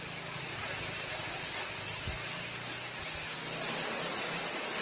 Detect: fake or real real